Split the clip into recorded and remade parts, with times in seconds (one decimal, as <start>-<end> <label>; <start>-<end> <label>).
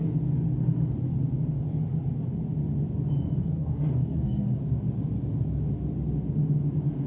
0.0-3.4 recorded; 3.4-4.5 remade; 4.5-7.1 recorded